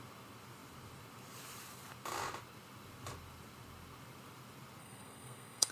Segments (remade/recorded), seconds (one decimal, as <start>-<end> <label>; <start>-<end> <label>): 0.0-4.8 recorded; 4.8-5.7 remade